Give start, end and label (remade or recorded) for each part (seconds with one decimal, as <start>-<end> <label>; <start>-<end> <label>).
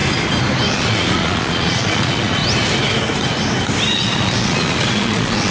0.0-0.7 recorded; 0.7-2.4 remade; 2.4-3.9 recorded; 3.9-5.5 remade